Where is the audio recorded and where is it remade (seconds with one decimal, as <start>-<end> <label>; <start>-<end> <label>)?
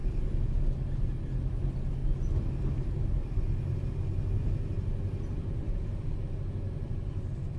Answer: 0.0-7.6 recorded